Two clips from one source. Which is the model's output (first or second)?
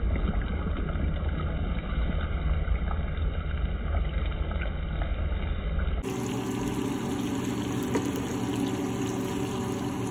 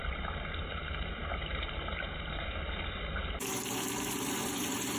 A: second